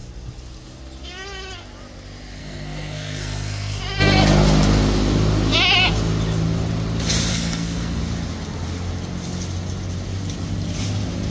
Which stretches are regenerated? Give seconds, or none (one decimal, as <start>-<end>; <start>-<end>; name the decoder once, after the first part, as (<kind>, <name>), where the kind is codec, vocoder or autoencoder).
2.4-3.8 (codec, SNAC); 7.3-8.0